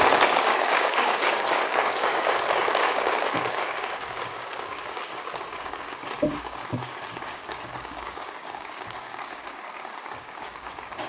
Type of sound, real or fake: fake